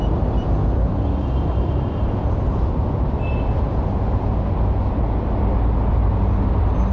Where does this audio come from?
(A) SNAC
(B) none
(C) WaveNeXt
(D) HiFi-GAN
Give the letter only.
B